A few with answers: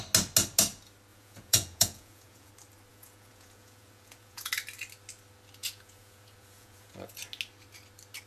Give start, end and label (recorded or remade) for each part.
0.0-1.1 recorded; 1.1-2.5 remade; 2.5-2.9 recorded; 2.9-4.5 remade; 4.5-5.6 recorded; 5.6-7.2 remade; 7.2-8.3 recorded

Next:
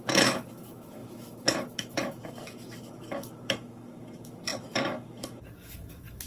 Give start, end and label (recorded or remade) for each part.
0.0-6.3 remade

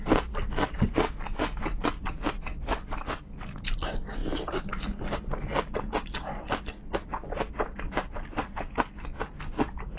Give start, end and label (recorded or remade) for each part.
0.0-10.0 recorded